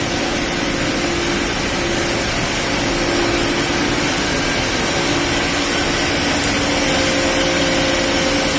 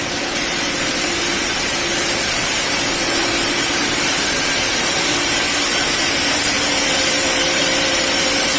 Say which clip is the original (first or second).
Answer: first